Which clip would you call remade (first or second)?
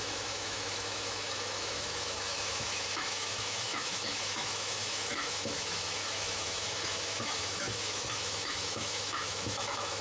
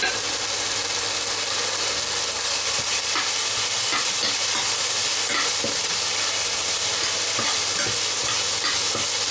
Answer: first